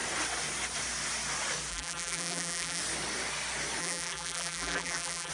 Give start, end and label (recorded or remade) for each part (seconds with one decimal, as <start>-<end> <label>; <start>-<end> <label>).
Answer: 0.0-1.7 recorded; 1.7-2.8 remade; 2.8-3.8 recorded; 3.8-5.3 remade